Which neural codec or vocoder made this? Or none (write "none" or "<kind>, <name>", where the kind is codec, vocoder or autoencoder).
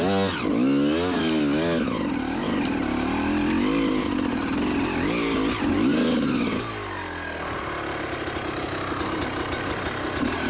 none